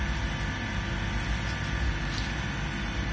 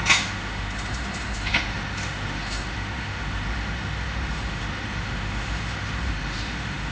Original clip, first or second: first